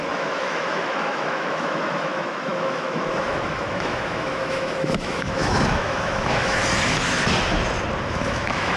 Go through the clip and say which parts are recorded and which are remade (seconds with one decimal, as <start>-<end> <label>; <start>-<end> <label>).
0.0-6.6 remade; 6.6-8.1 recorded; 8.1-8.8 remade

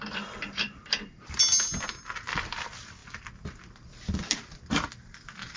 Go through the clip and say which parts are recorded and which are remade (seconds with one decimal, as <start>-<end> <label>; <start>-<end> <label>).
0.0-1.4 remade; 1.4-3.0 recorded; 3.0-4.2 remade; 4.2-5.6 recorded

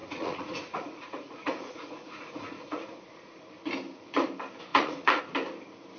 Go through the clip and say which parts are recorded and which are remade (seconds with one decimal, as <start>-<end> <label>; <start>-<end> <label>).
0.0-3.4 remade; 3.4-4.7 recorded; 4.7-5.2 remade; 5.2-6.0 recorded

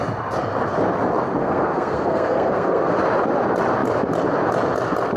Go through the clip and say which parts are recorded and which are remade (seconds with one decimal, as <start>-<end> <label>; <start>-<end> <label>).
0.0-1.4 recorded; 1.4-2.9 remade; 2.9-5.2 recorded

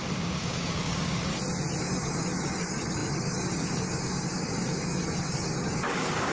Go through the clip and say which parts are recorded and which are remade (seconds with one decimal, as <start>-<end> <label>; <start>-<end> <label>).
0.0-1.3 remade; 1.3-1.8 recorded; 1.8-6.3 remade

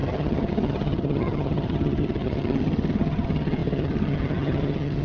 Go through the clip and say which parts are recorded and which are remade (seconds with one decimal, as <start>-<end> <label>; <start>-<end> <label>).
0.0-5.0 remade

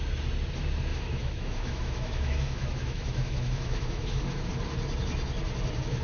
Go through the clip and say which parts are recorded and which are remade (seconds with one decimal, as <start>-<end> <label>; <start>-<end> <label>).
0.0-0.9 recorded; 0.9-4.5 remade; 4.5-6.0 recorded